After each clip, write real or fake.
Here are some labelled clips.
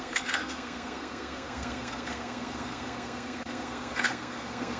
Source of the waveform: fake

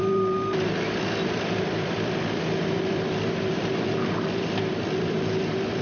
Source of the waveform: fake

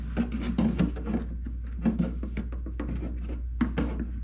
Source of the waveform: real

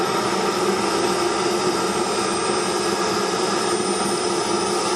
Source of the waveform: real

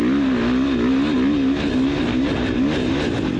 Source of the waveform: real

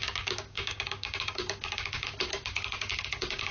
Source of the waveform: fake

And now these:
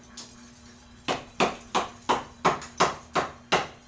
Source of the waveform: real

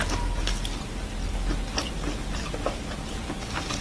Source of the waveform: real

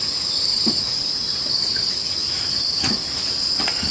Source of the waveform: real